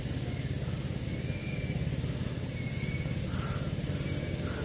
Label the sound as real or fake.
real